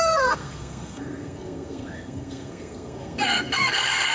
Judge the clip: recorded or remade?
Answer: remade